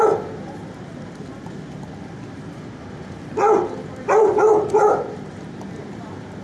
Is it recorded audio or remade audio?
remade